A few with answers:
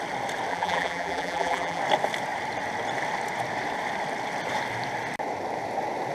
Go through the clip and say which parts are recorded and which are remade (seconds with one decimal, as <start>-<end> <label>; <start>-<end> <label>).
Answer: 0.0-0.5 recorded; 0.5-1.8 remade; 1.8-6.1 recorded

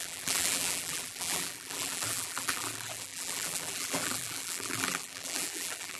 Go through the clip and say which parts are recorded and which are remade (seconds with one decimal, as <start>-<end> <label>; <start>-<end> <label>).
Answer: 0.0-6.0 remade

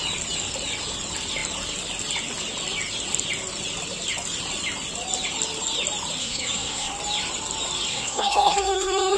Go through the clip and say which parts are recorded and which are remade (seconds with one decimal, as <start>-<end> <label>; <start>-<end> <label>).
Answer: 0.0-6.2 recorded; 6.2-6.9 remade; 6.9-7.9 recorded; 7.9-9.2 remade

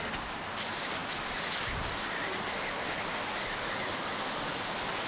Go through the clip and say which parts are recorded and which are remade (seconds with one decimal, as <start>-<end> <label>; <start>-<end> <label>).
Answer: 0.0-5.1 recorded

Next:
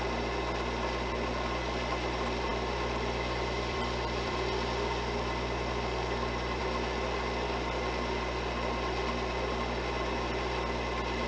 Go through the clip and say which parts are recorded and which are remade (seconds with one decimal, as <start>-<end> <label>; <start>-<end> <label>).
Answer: 0.0-2.5 recorded; 2.5-6.6 remade; 6.6-11.3 recorded

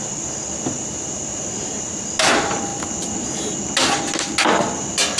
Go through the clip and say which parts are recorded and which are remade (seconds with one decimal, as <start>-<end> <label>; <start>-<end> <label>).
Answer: 0.0-5.2 recorded